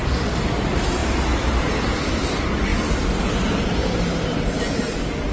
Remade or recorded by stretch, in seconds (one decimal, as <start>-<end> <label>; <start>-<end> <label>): 0.0-5.3 recorded